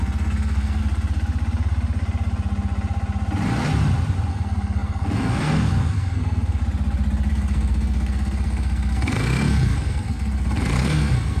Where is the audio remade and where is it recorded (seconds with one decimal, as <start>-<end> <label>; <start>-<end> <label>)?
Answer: 0.0-0.8 remade; 0.8-4.3 recorded; 4.3-6.6 remade; 6.6-7.3 recorded; 7.3-11.4 remade